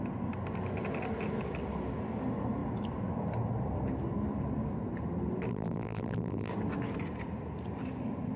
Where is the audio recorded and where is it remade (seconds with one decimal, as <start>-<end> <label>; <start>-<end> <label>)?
0.0-5.5 recorded; 5.5-6.5 remade; 6.5-8.4 recorded